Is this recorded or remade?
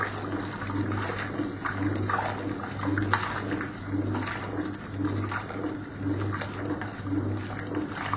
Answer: recorded